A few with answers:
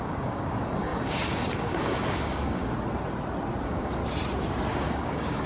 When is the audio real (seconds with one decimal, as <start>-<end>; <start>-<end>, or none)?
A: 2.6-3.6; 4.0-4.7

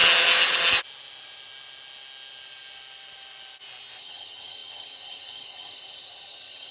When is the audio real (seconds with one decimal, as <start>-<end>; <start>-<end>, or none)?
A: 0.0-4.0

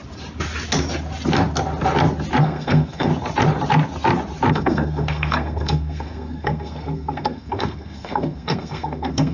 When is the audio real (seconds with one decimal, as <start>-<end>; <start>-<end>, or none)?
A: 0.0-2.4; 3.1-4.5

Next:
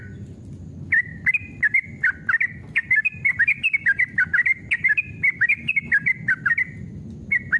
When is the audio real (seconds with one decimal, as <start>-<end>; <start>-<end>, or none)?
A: 0.0-7.6